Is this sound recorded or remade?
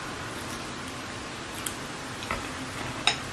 recorded